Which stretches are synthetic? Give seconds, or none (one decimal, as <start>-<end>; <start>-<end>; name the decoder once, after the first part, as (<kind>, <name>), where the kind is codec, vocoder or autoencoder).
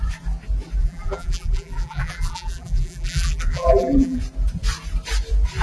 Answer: 0.8-4.2 (vocoder, BigVGAN v2)